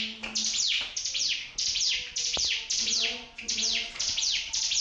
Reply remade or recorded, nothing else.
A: recorded